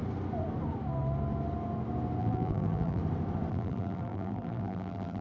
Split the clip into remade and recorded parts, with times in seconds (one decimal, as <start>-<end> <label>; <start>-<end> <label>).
0.0-2.2 recorded; 2.2-3.0 remade; 3.0-3.5 recorded; 3.5-5.2 remade